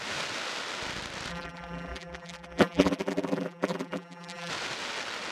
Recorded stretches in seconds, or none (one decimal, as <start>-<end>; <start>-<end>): 0.0-1.3; 4.5-5.3